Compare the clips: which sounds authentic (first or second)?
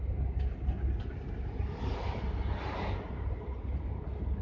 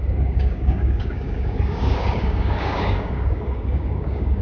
first